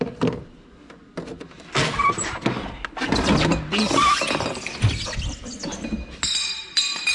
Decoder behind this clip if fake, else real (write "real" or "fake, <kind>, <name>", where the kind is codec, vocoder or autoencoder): real